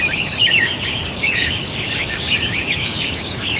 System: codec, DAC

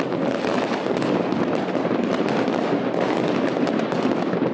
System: none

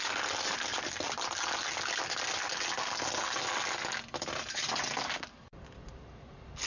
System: none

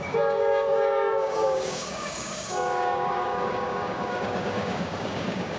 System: codec, DAC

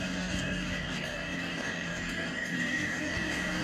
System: codec, DAC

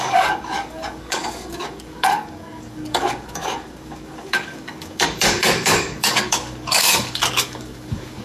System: codec, DAC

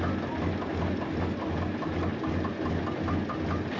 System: none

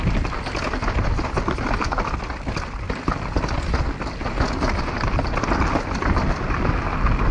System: none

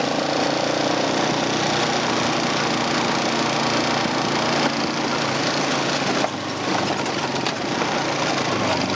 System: none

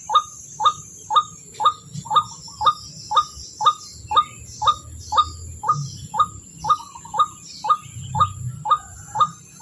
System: none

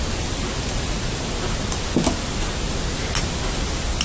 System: none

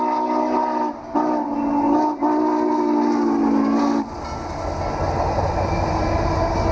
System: none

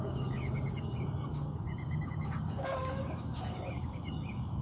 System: codec, DAC